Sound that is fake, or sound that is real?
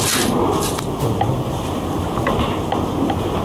fake